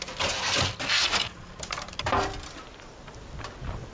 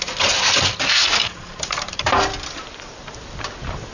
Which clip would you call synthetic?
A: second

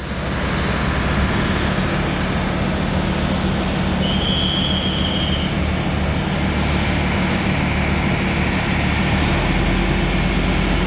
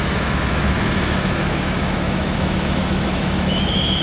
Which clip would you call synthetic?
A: second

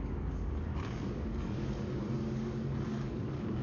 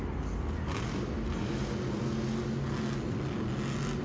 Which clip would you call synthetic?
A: first